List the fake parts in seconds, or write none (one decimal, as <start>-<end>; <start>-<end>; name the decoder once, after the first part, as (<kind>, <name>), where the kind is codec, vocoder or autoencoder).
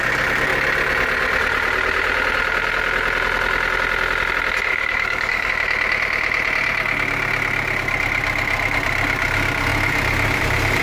4.7-5.5 (codec, DAC)